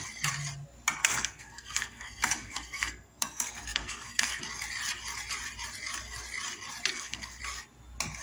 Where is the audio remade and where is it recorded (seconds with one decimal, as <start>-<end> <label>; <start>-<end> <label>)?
0.0-1.0 recorded; 1.0-4.4 remade; 4.4-6.9 recorded; 6.9-7.4 remade; 7.4-8.2 recorded